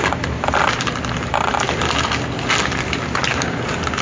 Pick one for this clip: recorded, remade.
recorded